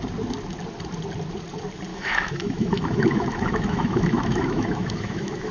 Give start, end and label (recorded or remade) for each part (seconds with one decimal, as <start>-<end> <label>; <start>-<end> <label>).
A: 0.0-1.9 recorded; 1.9-5.5 remade